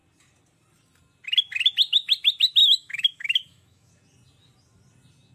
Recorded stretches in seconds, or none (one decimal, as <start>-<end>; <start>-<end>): 0.0-2.6; 3.9-5.3